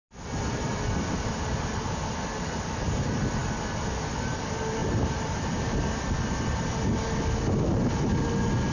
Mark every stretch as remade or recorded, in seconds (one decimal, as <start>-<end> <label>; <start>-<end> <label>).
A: 0.0-4.8 recorded; 4.8-5.8 remade; 5.8-8.7 recorded